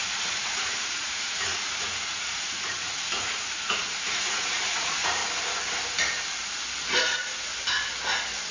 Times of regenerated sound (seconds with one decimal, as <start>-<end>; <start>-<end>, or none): 0.0-5.2; 7.0-7.5